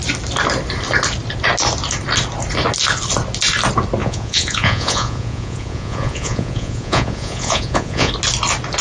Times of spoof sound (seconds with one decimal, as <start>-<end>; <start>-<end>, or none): 4.0-8.1